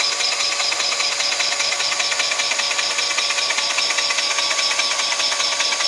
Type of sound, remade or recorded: recorded